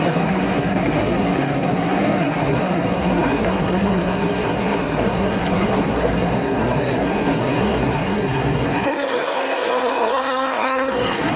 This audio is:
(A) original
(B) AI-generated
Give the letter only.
B